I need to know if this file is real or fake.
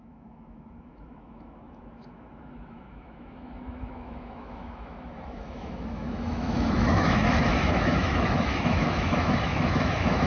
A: fake